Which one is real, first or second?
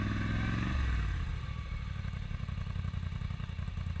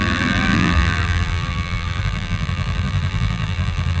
first